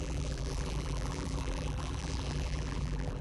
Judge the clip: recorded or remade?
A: remade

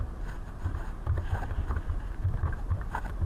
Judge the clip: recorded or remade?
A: remade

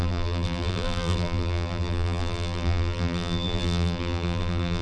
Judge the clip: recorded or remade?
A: remade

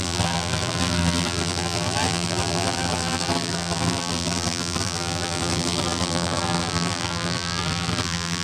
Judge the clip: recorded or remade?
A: remade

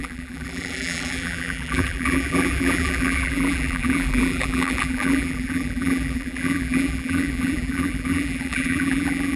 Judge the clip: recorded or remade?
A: remade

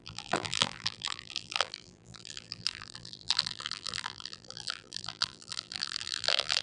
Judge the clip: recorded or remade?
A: remade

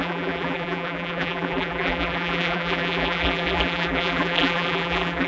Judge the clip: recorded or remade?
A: remade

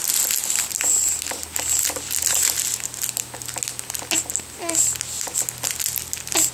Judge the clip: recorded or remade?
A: recorded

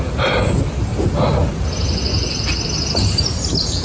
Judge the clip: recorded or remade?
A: recorded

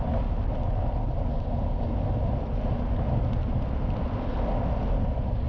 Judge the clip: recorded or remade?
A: recorded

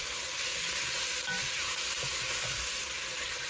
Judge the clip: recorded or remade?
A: remade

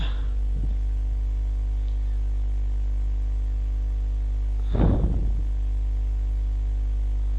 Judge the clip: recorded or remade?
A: recorded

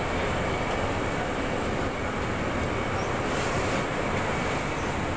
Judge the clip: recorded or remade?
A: recorded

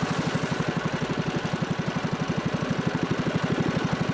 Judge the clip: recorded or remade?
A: recorded